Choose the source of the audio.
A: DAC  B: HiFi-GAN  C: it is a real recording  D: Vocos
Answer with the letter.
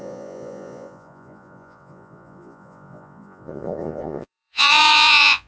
D